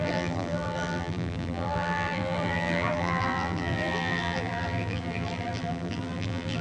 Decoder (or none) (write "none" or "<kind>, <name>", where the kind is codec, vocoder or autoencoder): vocoder, BigVGAN v2